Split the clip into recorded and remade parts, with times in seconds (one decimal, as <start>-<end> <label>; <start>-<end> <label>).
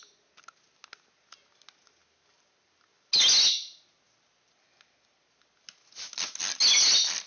0.0-7.3 recorded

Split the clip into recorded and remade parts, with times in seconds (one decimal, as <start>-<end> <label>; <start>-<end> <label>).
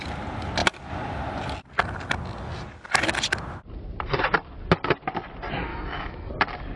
0.0-5.7 recorded; 5.7-6.3 remade; 6.3-6.8 recorded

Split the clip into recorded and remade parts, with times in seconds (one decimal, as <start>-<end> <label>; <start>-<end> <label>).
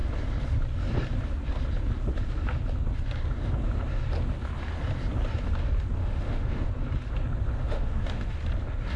0.0-6.0 recorded; 6.0-6.7 remade; 6.7-7.6 recorded; 7.6-8.4 remade; 8.4-9.0 recorded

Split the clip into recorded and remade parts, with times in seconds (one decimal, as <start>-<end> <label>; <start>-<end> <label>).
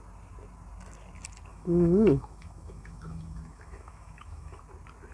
0.0-1.5 recorded; 1.5-4.6 remade; 4.6-5.1 recorded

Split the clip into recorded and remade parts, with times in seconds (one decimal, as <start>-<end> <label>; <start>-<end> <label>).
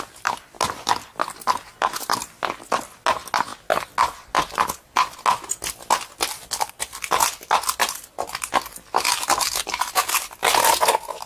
0.0-11.3 recorded